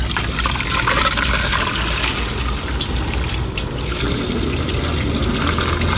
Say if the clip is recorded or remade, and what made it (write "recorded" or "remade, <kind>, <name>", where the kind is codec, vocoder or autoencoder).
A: recorded